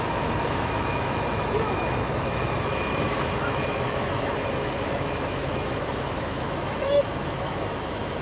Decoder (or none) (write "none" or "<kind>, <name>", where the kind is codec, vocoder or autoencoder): autoencoder, DAC-VAE